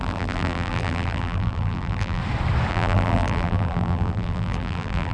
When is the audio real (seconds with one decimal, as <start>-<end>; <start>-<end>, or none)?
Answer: 2.2-2.7